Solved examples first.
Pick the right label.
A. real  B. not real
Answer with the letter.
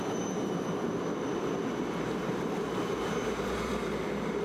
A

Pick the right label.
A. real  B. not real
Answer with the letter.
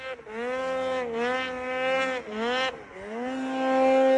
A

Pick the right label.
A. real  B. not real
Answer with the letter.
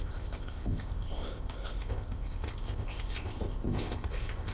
B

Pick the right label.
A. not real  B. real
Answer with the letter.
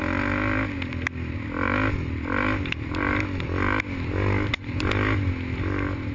B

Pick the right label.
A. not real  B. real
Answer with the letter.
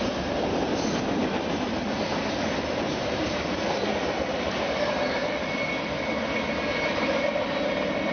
B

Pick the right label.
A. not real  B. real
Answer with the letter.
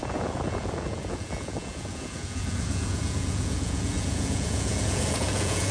A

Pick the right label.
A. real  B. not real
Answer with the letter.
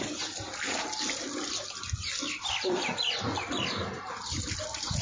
A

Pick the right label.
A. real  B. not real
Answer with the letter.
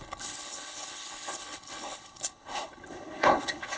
B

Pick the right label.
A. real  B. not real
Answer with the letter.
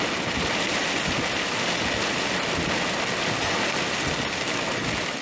A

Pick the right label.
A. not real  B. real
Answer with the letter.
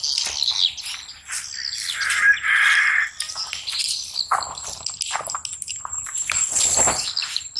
B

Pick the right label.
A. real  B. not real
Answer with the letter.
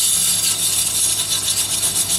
A